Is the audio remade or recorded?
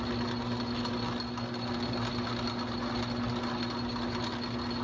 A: recorded